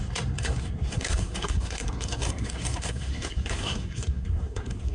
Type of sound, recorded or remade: remade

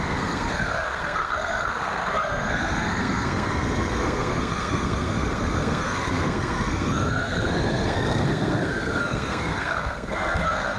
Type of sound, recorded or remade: remade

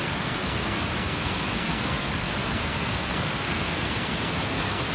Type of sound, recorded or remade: remade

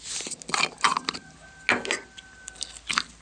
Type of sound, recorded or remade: recorded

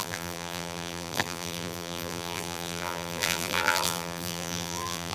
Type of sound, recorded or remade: remade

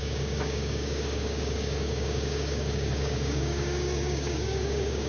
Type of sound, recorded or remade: remade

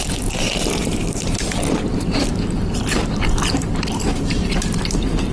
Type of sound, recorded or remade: remade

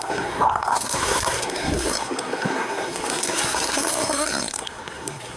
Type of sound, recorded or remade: remade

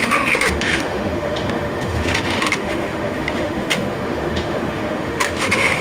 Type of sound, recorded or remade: remade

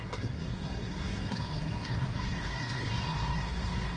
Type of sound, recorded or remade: remade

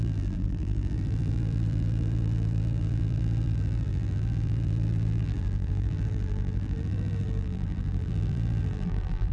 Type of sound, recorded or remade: remade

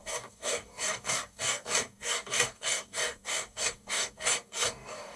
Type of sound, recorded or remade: remade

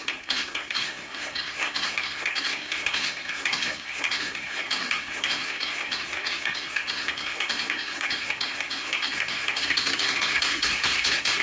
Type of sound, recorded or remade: remade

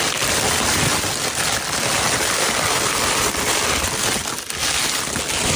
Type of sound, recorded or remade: recorded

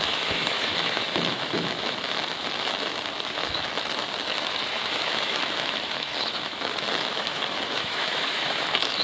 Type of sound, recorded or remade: remade